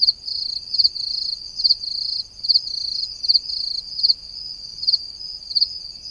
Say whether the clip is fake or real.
real